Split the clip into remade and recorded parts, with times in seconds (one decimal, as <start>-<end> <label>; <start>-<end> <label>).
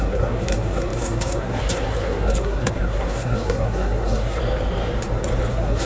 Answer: 0.0-4.4 remade; 4.4-5.5 recorded; 5.5-5.9 remade